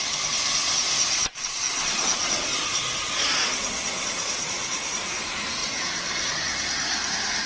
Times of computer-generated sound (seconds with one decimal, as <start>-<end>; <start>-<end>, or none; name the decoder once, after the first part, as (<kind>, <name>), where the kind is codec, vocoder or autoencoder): 0.6-5.1 (vocoder, Vocos); 5.6-6.3